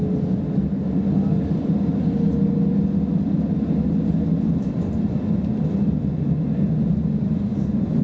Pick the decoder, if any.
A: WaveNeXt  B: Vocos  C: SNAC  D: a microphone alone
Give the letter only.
D